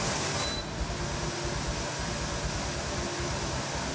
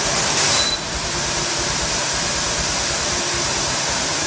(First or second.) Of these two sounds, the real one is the first